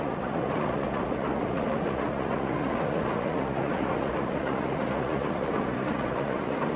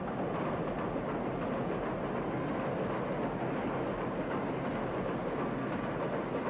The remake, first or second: first